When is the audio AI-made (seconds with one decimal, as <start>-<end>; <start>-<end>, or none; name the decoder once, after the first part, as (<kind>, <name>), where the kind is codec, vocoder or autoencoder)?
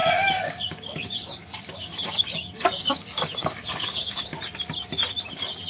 0.0-4.3 (codec, DAC); 5.3-5.7